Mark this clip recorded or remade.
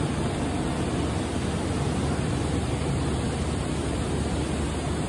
recorded